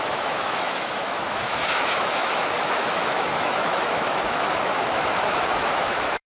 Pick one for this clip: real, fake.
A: fake